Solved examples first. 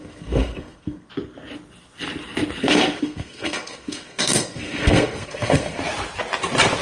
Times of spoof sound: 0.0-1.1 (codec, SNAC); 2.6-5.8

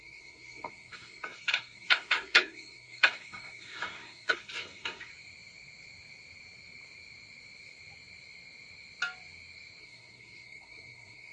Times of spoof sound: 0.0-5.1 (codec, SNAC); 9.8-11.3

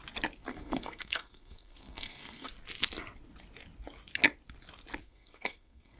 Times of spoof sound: 0.5-2.5 (codec, SNAC); 5.0-6.0

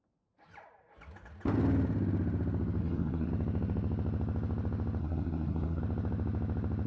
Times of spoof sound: 2.8-3.3 (codec, SNAC); 5.0-5.8

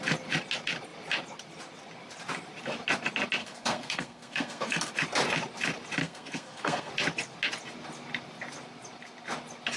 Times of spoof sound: 3.4-4.9 (codec, SNAC); 6.0-6.9